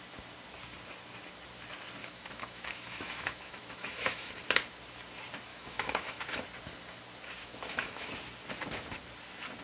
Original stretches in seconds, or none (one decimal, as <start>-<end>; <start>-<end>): 0.0-2.0; 4.3-5.5; 6.2-7.4; 8.1-9.6